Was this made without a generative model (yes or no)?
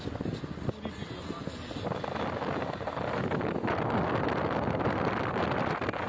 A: yes